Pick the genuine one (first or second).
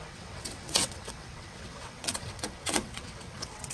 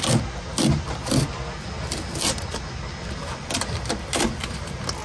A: second